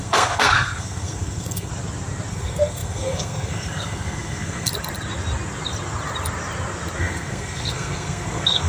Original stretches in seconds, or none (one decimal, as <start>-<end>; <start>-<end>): 1.7-2.3; 4.7-7.0